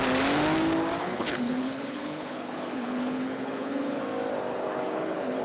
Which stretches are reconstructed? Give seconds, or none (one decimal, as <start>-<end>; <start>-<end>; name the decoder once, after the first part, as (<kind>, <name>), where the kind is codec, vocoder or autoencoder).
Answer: 1.0-4.0 (codec, HILCodec); 4.5-5.4